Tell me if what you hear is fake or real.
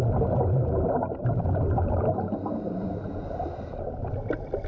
real